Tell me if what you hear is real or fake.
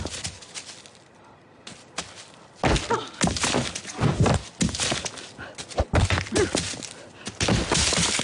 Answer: real